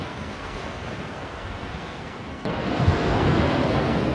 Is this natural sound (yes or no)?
no